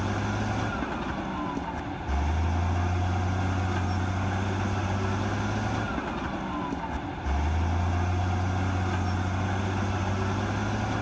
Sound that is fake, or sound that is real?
real